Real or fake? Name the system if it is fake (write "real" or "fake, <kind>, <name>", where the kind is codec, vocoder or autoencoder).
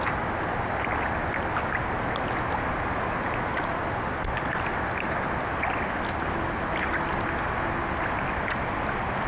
real